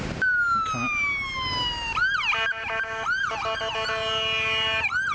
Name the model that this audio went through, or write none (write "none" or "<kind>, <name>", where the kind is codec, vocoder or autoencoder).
none